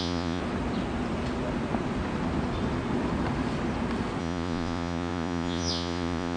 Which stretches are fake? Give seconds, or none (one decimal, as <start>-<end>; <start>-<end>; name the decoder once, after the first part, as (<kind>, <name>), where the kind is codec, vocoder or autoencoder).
0.0-0.4 (vocoder, Vocos); 4.2-6.4